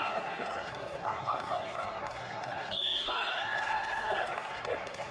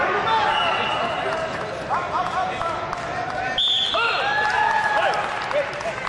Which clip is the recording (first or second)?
second